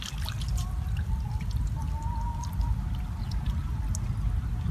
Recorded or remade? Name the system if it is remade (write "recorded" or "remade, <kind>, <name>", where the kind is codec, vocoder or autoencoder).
recorded